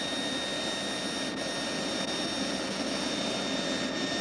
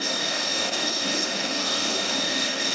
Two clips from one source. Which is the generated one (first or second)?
second